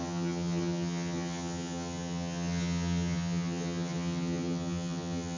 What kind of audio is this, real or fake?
fake